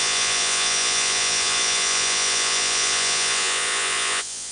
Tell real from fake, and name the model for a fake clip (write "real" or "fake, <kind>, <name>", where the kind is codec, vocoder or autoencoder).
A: fake, vocoder, Vocos